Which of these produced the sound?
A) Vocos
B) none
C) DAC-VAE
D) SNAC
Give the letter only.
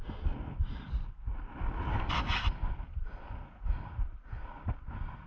B